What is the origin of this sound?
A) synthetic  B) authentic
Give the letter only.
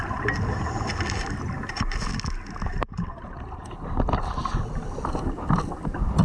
B